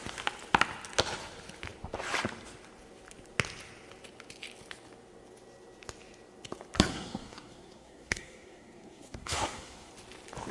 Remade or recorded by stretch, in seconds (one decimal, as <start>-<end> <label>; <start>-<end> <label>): 0.0-6.9 recorded; 6.9-9.9 remade; 9.9-10.5 recorded